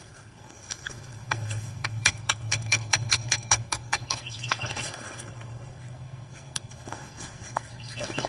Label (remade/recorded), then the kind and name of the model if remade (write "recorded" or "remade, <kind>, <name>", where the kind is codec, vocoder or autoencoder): remade, codec, SNAC